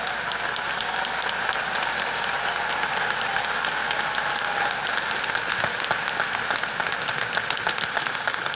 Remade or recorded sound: recorded